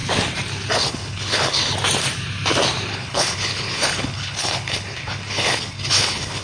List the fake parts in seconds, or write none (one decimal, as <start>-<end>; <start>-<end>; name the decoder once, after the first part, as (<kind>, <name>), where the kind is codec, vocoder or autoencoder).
0.7-1.7 (codec, HILCodec); 2.9-6.4